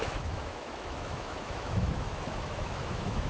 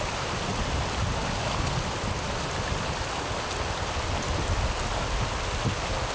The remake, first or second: first